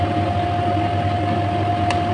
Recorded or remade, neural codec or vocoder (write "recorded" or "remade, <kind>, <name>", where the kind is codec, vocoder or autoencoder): recorded